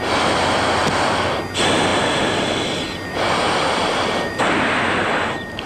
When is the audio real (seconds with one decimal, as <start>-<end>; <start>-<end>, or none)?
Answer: 0.0-0.8; 1.4-1.9; 4.8-5.7